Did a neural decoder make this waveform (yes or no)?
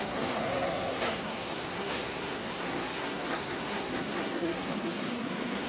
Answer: yes